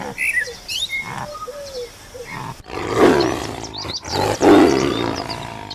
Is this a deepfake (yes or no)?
no